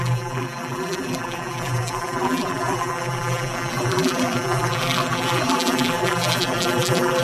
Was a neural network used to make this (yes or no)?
yes